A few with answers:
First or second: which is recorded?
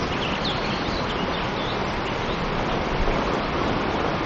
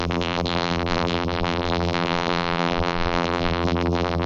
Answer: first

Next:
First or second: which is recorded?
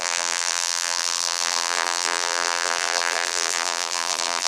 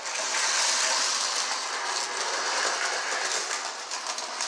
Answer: second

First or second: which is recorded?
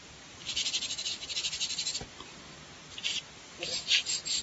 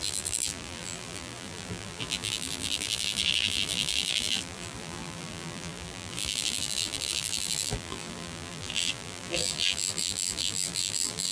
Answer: first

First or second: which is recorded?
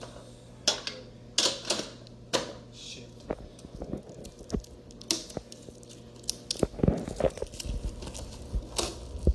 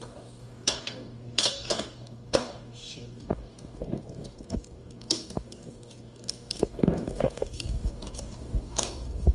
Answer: first